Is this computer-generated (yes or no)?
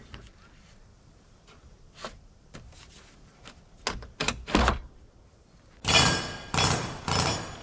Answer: no